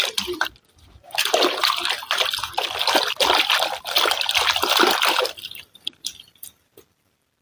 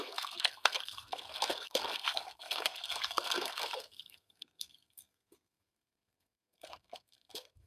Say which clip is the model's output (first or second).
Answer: second